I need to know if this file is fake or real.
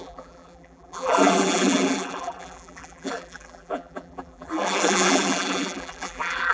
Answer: fake